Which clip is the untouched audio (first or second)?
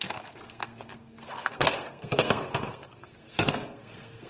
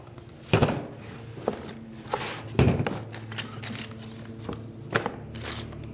second